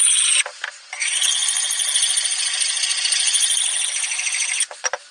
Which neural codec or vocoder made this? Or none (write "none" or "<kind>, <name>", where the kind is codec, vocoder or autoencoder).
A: none